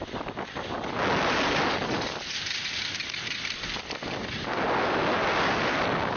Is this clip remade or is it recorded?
recorded